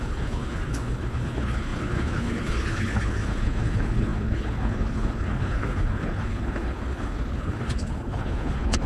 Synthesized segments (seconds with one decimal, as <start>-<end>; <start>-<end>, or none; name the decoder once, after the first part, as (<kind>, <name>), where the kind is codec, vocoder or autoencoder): 0.0-8.9 (codec, HILCodec)